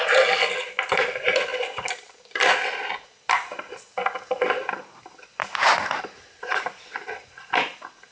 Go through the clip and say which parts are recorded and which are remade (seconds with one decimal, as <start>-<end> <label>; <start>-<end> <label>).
0.0-8.1 recorded